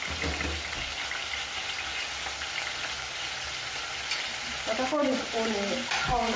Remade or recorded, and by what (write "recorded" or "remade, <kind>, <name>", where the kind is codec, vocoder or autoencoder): recorded